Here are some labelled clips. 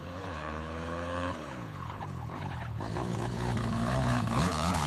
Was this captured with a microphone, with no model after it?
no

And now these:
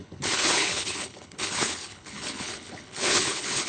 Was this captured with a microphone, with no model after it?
no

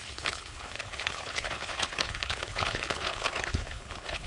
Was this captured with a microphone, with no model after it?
no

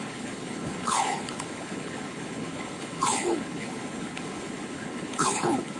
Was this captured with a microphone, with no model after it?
no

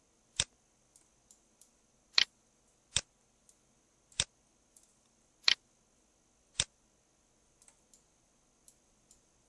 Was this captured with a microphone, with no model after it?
yes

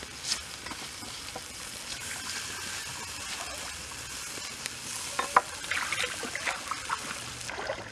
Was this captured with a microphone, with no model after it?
yes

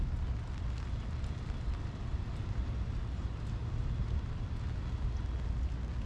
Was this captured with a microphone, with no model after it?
yes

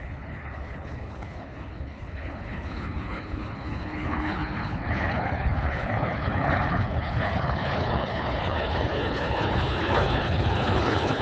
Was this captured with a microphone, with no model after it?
no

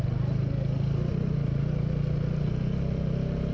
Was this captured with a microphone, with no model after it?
yes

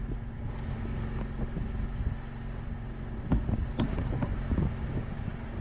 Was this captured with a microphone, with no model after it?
yes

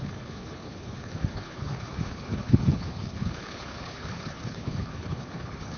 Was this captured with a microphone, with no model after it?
no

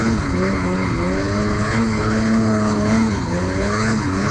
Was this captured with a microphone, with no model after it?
no